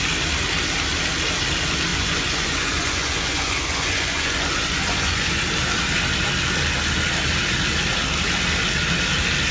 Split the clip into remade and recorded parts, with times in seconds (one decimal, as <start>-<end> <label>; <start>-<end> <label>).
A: 0.0-1.9 recorded; 1.9-5.4 remade; 5.4-9.5 recorded

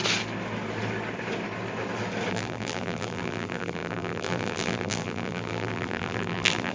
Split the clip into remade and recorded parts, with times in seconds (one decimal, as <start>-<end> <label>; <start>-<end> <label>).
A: 0.0-2.3 recorded; 2.3-6.7 remade

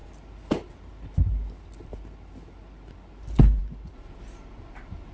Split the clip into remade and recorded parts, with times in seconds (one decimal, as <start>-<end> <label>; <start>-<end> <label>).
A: 0.0-5.1 recorded

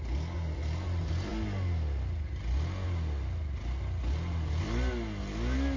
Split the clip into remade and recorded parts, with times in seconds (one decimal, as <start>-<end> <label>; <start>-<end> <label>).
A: 0.0-5.8 recorded